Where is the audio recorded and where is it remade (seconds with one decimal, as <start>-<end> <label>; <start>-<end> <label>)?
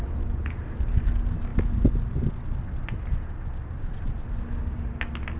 0.0-5.4 recorded